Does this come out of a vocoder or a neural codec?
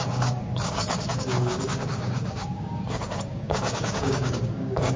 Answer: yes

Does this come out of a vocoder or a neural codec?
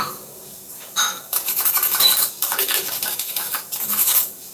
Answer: yes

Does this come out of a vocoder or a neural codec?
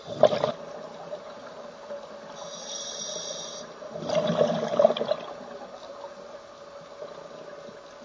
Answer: no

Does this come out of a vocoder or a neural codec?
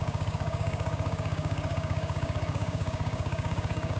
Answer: yes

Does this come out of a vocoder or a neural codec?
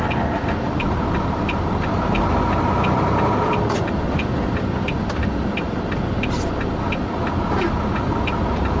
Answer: no